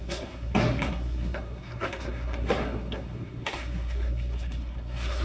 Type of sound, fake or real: fake